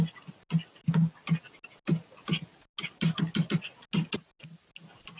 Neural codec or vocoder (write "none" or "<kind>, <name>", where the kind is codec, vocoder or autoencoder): none